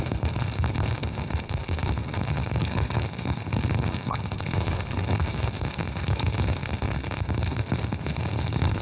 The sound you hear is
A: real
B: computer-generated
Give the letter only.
B